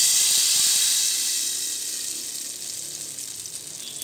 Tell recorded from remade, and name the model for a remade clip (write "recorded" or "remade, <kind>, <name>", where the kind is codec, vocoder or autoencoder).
recorded